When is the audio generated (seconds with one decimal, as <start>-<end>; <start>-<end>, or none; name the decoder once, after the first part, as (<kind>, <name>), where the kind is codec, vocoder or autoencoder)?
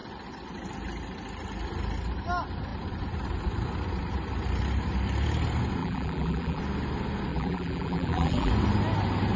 5.8-6.6 (vocoder, BigVGAN v2); 7.3-8.5